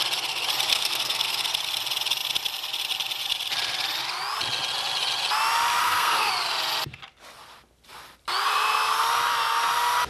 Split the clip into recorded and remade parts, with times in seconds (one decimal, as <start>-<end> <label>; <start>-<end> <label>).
0.0-0.7 recorded; 0.7-1.4 remade; 1.4-5.8 recorded; 5.8-6.3 remade; 6.3-10.1 recorded